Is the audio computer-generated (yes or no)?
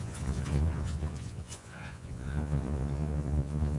yes